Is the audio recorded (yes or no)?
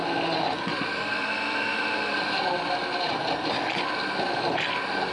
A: yes